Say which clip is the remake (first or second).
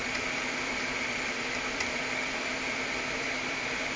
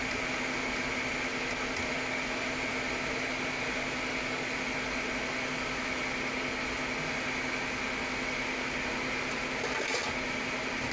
first